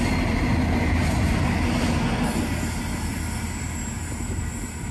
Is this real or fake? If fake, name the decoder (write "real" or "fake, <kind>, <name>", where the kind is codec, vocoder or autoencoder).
real